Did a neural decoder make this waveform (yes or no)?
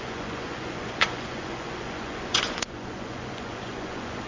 yes